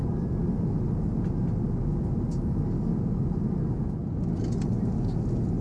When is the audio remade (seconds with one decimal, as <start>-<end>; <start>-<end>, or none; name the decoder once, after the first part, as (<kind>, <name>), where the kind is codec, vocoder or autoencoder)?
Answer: none